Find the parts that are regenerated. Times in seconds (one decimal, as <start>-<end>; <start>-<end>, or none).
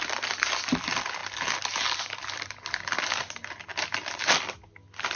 none